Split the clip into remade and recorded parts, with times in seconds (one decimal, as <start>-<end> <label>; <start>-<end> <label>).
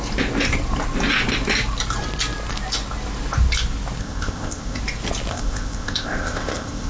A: 0.0-4.0 recorded; 4.0-4.8 remade; 4.8-5.3 recorded; 5.3-6.9 remade